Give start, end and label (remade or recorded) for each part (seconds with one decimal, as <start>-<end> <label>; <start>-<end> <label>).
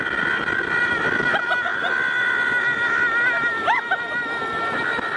0.0-5.2 recorded